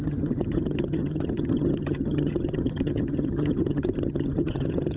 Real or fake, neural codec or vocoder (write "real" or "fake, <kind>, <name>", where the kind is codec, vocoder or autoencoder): fake, vocoder, HiFi-GAN